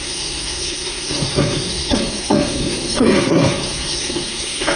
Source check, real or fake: fake